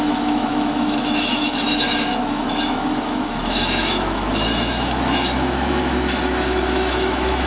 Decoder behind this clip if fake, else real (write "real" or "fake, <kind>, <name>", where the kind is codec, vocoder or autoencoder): fake, autoencoder, DAC-VAE